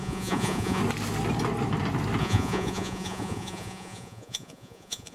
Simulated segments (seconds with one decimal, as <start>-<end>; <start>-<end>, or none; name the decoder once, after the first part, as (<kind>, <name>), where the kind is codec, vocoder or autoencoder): 0.0-0.8 (vocoder, Vocos); 2.2-5.1